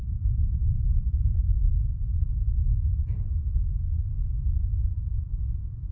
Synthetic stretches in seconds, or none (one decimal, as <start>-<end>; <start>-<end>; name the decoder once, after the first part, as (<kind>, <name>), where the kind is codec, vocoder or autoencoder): 0.0-2.2 (vocoder, BigVGAN v2); 4.9-5.4